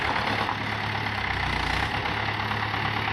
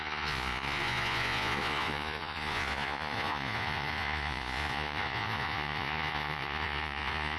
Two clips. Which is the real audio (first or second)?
first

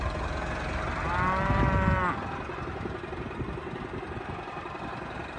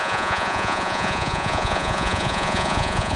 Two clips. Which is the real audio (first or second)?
first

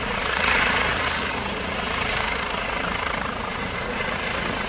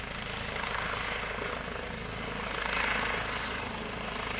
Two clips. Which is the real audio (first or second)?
second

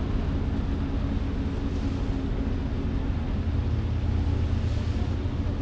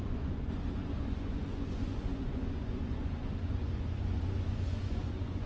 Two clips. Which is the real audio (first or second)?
first